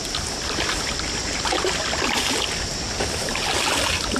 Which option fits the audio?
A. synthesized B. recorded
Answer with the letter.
B